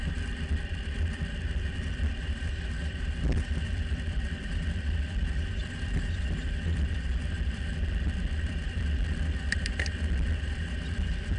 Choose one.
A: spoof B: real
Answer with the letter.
A